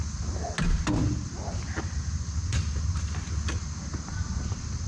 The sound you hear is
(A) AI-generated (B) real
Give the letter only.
B